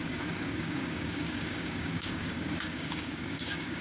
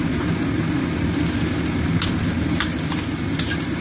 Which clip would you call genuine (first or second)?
second